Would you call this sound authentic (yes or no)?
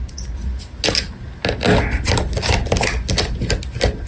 yes